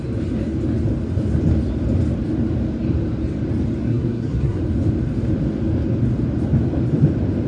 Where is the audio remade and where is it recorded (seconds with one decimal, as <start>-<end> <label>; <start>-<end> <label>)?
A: 0.0-3.8 recorded; 3.8-4.6 remade; 4.6-7.5 recorded